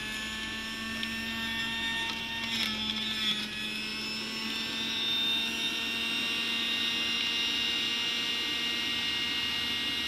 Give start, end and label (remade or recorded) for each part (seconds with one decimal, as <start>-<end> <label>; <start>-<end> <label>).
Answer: 0.0-10.1 recorded